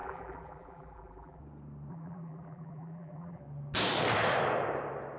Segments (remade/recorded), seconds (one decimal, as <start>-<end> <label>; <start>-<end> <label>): 0.0-1.4 remade; 1.4-1.9 recorded; 1.9-3.4 remade; 3.4-5.2 recorded